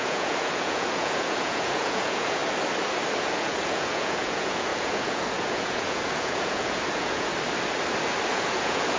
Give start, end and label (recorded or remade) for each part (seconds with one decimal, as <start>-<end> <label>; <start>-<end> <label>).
0.0-2.4 remade; 2.4-3.2 recorded; 3.2-7.3 remade; 7.3-8.3 recorded; 8.3-9.0 remade